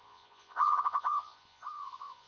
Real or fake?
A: fake